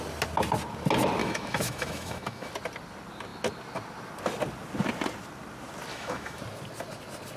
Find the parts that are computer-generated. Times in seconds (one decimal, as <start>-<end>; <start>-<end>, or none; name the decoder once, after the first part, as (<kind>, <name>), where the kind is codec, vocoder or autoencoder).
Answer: 1.2-2.5 (autoencoder, DAC-VAE); 5.9-6.4